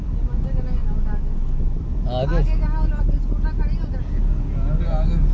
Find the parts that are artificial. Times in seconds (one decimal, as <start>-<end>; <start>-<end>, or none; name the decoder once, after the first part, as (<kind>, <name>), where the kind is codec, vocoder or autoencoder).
none